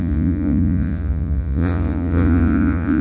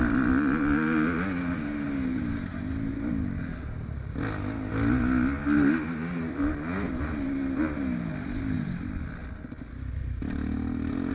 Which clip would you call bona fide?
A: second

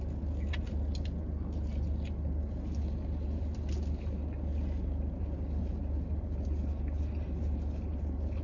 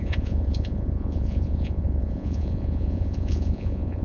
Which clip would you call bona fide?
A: first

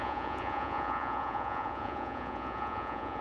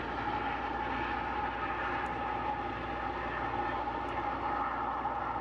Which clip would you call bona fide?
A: second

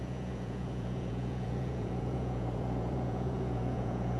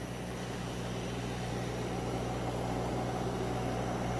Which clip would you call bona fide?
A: second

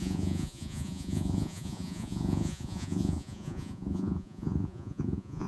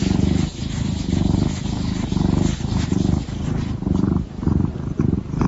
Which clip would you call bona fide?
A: second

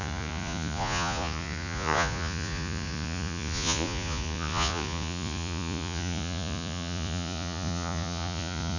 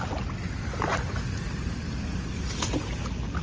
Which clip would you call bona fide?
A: second